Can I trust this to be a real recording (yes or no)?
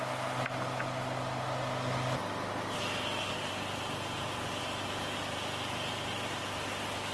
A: yes